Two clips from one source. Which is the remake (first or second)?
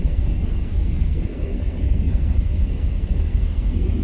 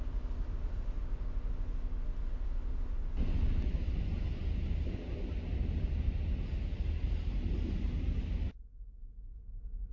first